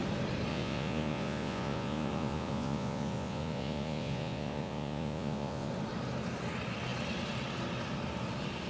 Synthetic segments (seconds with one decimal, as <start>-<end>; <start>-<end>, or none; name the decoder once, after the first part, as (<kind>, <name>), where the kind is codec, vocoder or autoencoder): 0.5-5.7 (vocoder, Vocos)